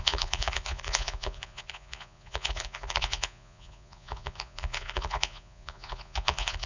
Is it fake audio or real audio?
fake